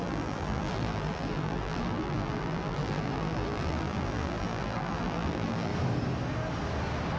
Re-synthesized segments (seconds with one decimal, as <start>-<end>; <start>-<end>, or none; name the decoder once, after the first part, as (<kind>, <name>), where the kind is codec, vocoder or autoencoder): 0.0-5.7 (vocoder, BigVGAN v2)